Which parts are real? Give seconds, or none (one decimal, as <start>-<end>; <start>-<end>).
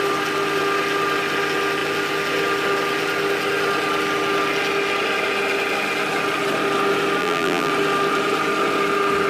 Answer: 0.0-7.2; 7.7-9.3